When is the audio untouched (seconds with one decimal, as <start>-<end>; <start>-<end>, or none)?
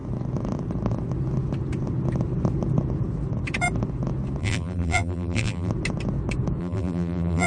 0.0-4.4; 5.7-6.6